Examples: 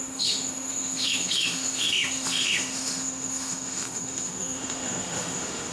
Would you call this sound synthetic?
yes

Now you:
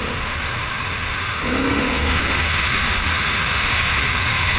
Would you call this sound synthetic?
yes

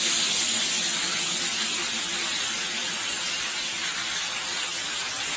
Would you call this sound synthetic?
no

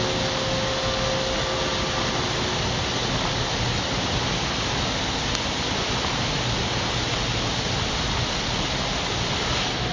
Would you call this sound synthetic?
no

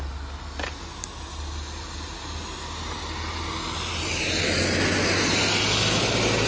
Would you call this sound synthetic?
no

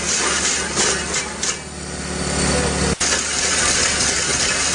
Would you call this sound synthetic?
no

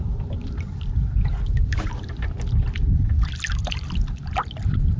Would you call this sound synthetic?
no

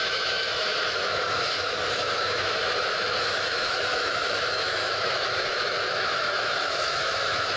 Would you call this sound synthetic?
yes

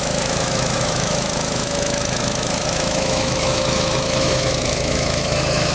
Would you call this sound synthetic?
yes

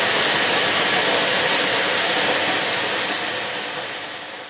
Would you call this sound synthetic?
no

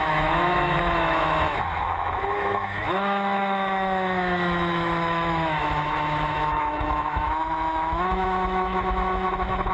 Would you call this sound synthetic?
yes